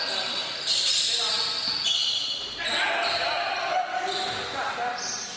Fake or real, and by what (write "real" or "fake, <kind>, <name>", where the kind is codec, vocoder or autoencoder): real